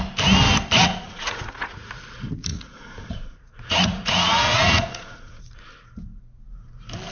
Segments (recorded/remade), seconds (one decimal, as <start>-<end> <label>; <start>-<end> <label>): 0.0-0.8 recorded; 0.8-1.9 remade; 1.9-2.5 recorded; 2.5-5.6 remade; 5.6-7.1 recorded